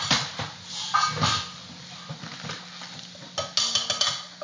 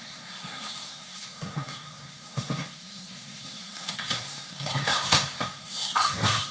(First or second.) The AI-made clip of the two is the second